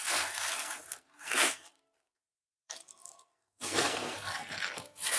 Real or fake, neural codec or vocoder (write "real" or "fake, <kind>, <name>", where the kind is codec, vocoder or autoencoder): fake, codec, SNAC